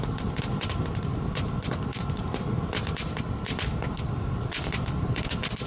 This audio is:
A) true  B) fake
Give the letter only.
A